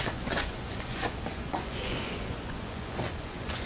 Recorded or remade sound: remade